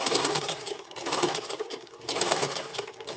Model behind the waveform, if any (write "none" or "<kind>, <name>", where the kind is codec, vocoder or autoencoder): codec, SNAC